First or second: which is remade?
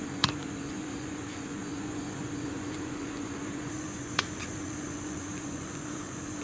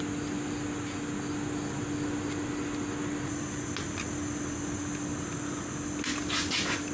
first